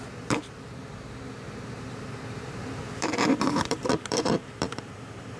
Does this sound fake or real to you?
fake